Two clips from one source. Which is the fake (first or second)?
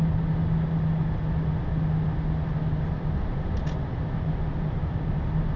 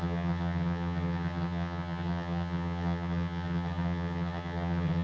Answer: second